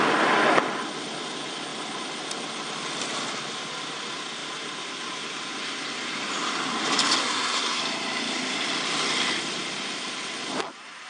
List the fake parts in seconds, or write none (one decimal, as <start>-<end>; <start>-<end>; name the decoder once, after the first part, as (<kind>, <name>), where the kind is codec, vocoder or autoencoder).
7.2-7.8 (codec, SNAC)